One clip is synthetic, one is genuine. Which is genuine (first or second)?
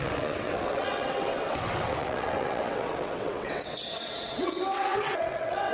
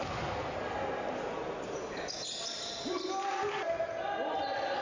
second